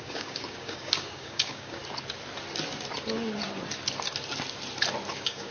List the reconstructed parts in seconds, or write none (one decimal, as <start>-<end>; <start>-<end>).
0.0-1.8; 5.1-5.5

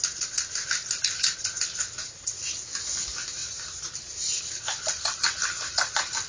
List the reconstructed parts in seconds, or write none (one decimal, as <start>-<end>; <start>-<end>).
none

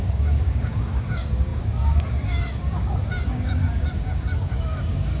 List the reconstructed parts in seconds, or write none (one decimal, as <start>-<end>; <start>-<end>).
0.0-5.2

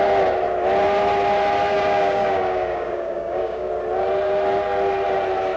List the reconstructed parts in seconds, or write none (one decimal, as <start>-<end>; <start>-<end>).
1.7-3.7

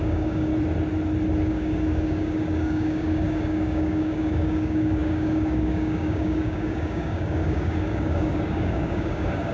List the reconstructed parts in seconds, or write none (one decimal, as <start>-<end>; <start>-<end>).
0.0-0.5; 1.5-9.5